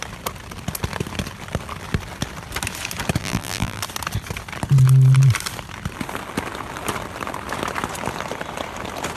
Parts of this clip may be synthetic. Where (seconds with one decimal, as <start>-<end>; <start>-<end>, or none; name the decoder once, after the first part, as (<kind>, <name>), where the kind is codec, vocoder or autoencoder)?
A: 3.2-3.8 (vocoder, BigVGAN v2)